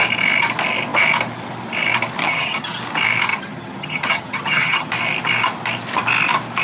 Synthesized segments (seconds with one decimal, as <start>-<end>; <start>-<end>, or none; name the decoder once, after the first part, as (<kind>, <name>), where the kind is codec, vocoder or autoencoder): 2.2-2.8 (vocoder, HiFi-GAN); 3.3-4.9